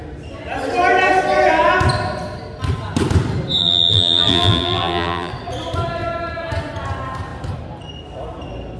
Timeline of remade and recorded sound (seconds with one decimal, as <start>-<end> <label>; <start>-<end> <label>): 0.0-3.6 recorded; 3.6-5.3 remade; 5.3-8.8 recorded